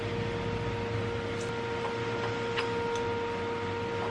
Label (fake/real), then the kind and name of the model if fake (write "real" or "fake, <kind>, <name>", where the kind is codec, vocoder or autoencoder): real